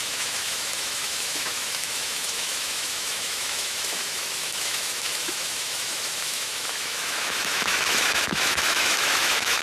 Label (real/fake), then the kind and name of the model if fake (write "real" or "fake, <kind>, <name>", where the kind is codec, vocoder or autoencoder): fake, autoencoder, DAC-VAE